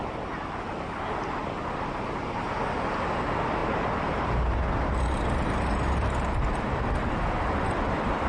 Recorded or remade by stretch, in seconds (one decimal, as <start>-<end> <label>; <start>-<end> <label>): 0.0-3.6 recorded; 3.6-7.1 remade; 7.1-8.3 recorded